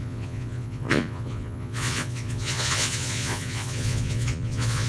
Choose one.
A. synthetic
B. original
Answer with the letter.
A